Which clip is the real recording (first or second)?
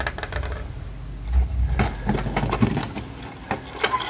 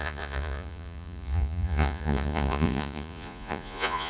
first